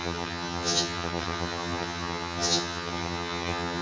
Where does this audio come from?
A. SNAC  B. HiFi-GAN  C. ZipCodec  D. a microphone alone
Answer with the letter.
B